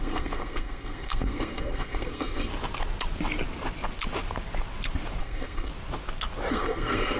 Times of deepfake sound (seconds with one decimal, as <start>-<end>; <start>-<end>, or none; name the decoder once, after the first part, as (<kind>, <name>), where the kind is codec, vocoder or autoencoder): 0.0-2.5 (codec, SNAC); 5.2-5.7; 6.5-7.2